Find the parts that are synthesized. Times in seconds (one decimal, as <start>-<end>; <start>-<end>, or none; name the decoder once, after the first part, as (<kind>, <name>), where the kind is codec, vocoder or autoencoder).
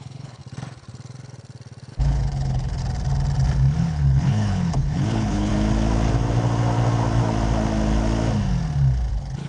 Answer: 0.0-0.4 (codec, HILCodec); 1.9-2.8; 3.8-5.5; 9.1-9.5